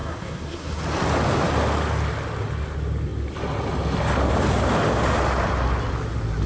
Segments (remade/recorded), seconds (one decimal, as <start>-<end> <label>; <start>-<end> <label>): 0.0-0.8 remade; 0.8-6.5 recorded